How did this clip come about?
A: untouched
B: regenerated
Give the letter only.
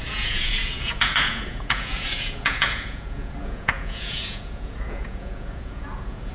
B